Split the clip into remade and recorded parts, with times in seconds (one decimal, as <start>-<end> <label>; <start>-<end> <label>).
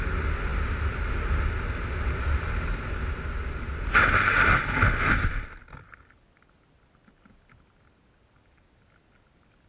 0.0-9.7 recorded